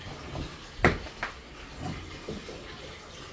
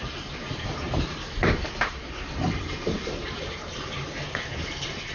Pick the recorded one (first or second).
first